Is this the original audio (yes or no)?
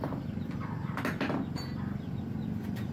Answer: yes